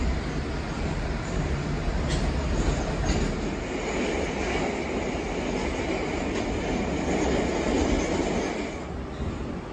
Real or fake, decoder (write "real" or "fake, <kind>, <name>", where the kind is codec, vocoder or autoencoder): real